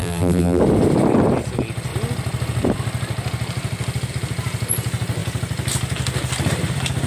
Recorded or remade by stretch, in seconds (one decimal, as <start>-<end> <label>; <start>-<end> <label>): 0.0-0.6 remade; 0.6-7.1 recorded